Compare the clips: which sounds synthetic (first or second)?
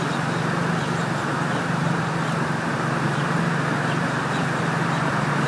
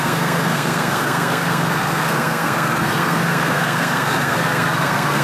second